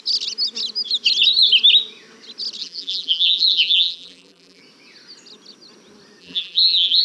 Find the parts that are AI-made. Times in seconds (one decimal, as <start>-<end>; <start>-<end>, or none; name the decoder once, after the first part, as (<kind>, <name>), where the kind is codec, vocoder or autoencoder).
2.6-4.6 (vocoder, BigVGAN v2); 6.2-7.0